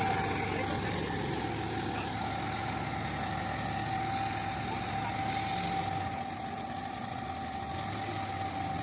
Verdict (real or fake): real